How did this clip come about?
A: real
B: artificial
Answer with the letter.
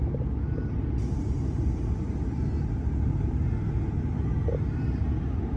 A